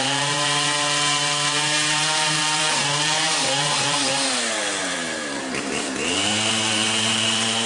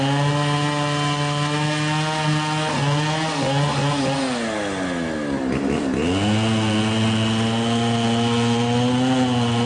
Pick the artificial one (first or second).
first